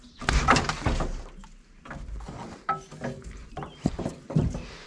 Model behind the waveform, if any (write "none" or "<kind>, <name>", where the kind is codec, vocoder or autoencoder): none